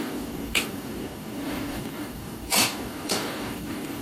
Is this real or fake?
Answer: fake